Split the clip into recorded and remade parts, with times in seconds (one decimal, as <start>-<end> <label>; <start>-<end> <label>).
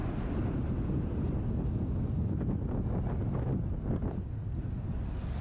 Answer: 0.0-5.4 recorded